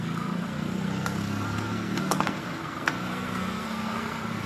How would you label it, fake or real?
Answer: fake